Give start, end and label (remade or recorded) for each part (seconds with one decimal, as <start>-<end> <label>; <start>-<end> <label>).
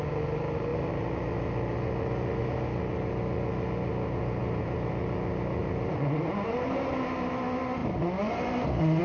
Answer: 0.0-4.4 recorded; 4.4-4.9 remade; 4.9-5.6 recorded; 5.6-6.9 remade; 6.9-7.8 recorded; 7.8-9.0 remade